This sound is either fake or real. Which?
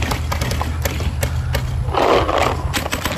real